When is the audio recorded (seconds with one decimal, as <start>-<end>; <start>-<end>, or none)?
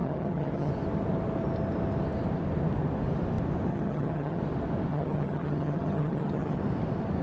0.7-3.7; 4.4-4.9; 6.6-7.2